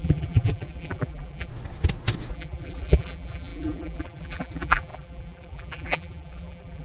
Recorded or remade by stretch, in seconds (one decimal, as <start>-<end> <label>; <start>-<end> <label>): 0.0-1.5 remade; 1.5-2.3 recorded; 2.3-6.8 remade